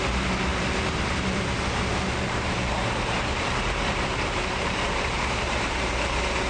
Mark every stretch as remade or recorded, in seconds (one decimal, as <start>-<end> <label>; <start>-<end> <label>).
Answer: 0.0-6.5 remade